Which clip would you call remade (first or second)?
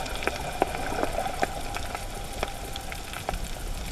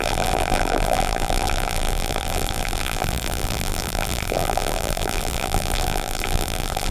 second